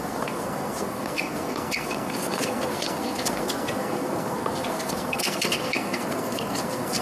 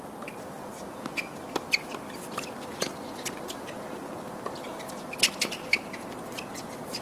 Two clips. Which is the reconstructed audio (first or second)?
first